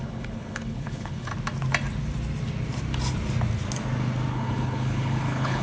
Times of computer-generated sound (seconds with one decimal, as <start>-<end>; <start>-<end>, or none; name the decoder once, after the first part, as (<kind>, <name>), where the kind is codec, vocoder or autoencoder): 0.0-1.3 (codec, HILCodec); 4.3-5.6